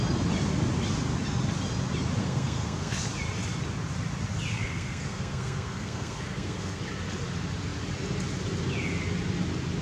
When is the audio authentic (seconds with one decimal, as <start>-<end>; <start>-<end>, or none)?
0.0-2.2; 3.0-4.5; 6.8-9.8